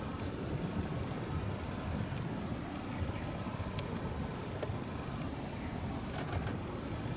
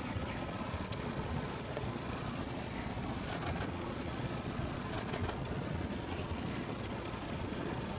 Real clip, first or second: first